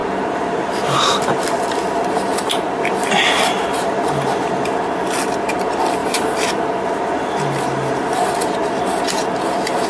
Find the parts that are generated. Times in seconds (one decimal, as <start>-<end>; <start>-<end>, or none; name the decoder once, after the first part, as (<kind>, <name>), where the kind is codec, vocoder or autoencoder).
0.0-1.4 (vocoder, BigVGAN v2); 3.7-4.5; 6.0-6.9